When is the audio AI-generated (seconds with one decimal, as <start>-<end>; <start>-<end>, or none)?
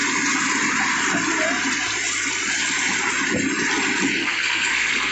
4.2-5.1